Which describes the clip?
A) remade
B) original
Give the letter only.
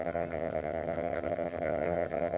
A